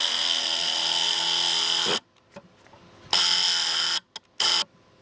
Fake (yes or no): no